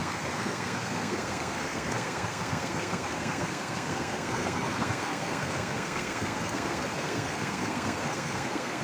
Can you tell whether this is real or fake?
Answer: fake